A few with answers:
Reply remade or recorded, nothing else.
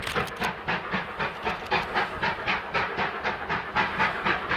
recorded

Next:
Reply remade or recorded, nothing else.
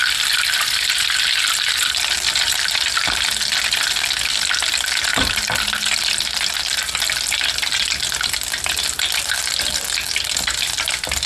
recorded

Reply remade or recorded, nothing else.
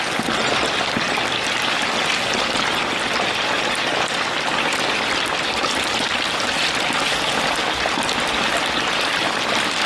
recorded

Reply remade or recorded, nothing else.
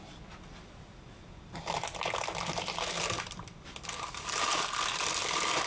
recorded